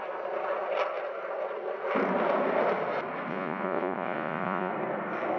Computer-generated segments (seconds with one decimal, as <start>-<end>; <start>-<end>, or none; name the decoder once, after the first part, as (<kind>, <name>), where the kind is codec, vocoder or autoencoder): 3.3-4.7 (vocoder, Vocos)